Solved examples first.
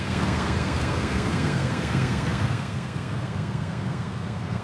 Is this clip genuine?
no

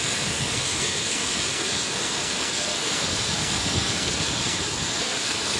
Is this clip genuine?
no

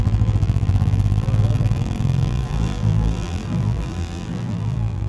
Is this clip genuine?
no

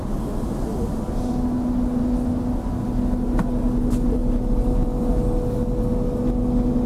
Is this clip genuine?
yes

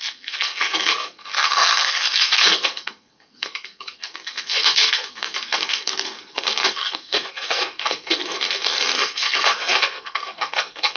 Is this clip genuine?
no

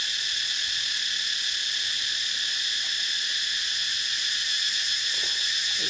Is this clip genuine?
yes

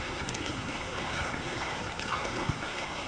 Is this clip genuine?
no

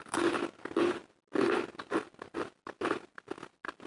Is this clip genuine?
yes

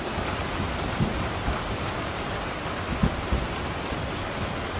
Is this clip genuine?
no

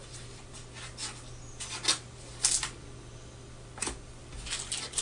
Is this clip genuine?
yes